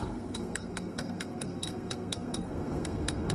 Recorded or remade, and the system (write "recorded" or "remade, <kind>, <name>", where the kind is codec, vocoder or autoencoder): remade, codec, SNAC